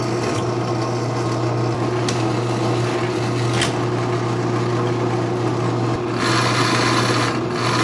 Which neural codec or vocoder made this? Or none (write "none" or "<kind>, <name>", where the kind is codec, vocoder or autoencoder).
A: none